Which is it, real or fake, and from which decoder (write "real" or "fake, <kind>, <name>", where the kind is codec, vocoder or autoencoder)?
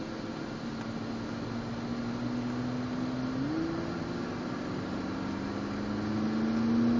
real